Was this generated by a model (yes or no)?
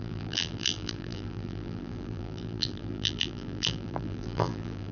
yes